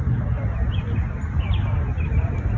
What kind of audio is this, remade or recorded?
recorded